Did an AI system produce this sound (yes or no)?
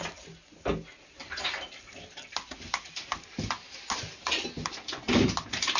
no